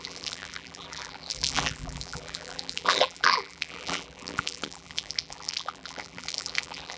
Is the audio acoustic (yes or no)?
no